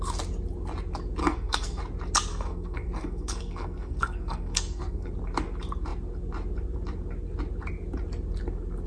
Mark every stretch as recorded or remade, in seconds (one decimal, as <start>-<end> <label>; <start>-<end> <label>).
0.0-1.2 recorded; 1.2-1.8 remade; 1.8-2.3 recorded; 2.3-5.1 remade; 5.1-8.9 recorded